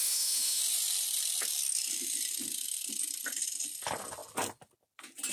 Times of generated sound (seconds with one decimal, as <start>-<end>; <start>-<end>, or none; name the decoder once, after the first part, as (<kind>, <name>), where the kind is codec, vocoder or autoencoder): 0.0-0.6 (autoencoder, DAC-VAE)